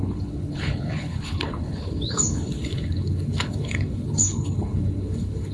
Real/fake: fake